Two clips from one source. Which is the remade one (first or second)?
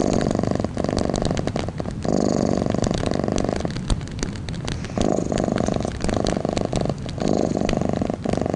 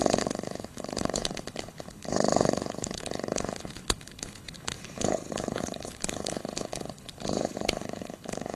second